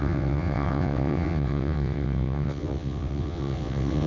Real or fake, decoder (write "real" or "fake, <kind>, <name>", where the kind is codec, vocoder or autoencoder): fake, vocoder, WaveNeXt